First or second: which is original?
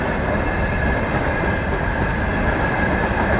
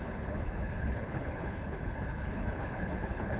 first